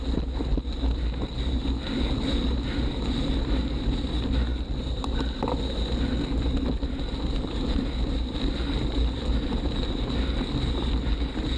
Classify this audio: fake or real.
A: real